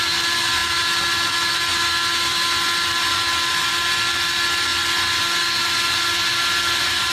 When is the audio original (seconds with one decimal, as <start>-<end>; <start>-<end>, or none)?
0.0-7.1